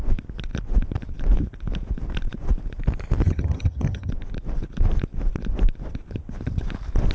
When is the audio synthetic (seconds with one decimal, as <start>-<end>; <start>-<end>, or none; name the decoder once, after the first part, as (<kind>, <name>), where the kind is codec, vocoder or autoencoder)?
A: 3.2-4.1 (vocoder, HiFi-GAN)